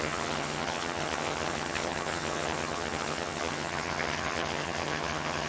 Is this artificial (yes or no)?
yes